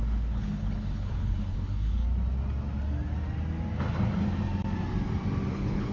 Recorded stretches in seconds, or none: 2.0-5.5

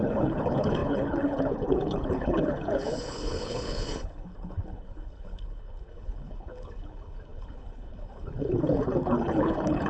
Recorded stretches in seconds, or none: none

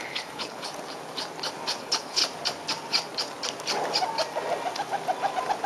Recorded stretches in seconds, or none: 0.7-1.8; 2.2-5.7

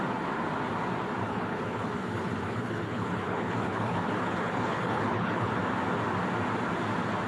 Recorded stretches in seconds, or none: 0.0-1.2; 5.6-7.3

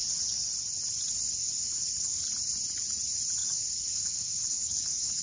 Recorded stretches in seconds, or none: 0.0-1.4; 2.2-3.4

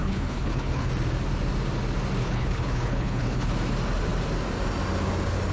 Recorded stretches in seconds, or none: 0.9-2.2; 3.5-5.5

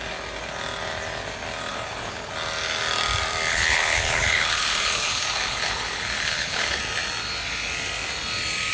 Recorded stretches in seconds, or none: 0.0-1.7; 2.3-3.5; 6.8-8.7